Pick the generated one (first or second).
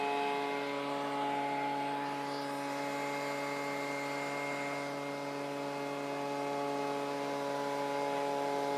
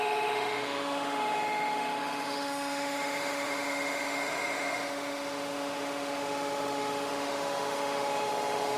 second